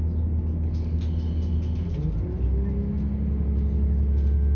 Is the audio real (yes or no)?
yes